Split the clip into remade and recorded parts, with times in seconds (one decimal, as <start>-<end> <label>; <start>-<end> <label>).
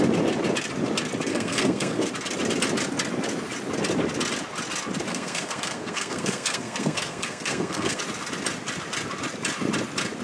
0.0-1.3 recorded; 1.3-2.1 remade; 2.1-5.1 recorded; 5.1-8.0 remade; 8.0-10.2 recorded